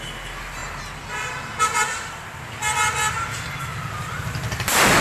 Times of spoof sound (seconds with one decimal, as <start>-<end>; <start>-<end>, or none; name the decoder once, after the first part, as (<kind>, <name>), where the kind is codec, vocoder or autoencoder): 0.6-2.4 (vocoder, BigVGAN v2); 3.7-4.2